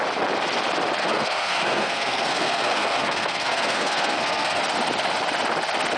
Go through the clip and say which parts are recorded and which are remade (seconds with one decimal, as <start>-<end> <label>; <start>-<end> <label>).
0.0-1.0 recorded; 1.0-4.6 remade; 4.6-6.0 recorded